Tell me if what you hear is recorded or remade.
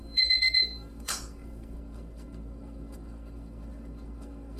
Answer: remade